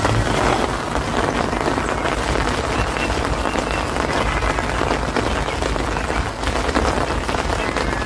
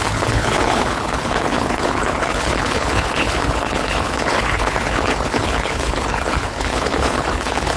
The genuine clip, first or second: first